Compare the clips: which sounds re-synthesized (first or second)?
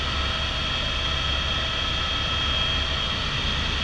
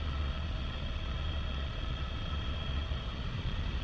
second